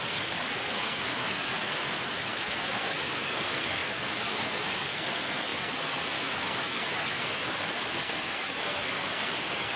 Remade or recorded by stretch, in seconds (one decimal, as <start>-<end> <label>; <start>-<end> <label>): 0.0-9.8 remade